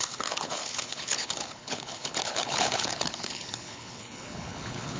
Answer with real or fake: fake